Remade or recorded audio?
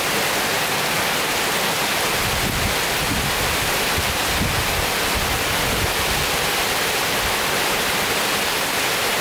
recorded